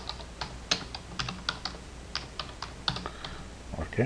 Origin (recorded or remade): recorded